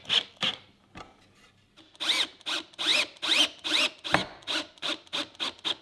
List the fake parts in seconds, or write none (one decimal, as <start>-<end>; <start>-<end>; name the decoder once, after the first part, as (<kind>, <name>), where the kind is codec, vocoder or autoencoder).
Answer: 4.2-4.9 (vocoder, Vocos)